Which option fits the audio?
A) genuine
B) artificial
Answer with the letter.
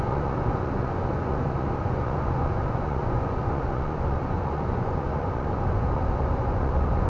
B